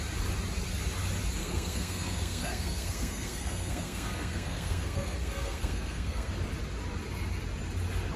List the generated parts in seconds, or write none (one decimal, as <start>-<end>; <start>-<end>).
1.4-6.3